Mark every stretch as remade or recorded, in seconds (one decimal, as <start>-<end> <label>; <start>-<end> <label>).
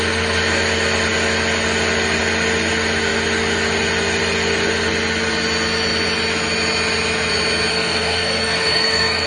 0.0-7.7 recorded; 7.7-9.3 remade